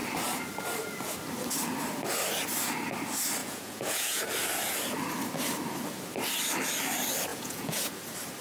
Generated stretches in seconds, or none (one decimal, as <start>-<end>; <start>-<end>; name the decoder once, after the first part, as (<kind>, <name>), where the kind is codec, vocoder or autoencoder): 3.4-4.2 (vocoder, Vocos); 7.3-7.9